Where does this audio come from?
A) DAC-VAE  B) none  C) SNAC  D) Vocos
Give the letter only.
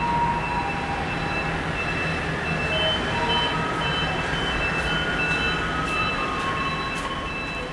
B